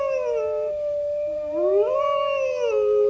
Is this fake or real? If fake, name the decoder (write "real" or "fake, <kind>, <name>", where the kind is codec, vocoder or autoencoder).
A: real